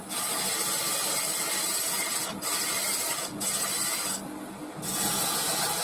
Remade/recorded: recorded